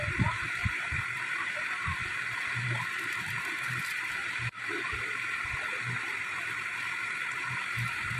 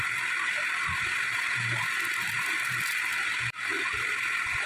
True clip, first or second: second